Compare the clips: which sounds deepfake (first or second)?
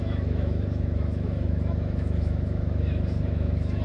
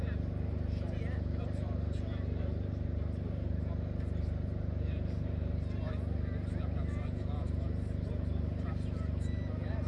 first